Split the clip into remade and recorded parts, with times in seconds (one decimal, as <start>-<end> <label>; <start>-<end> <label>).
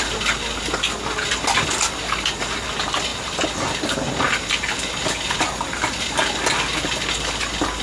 0.0-7.8 recorded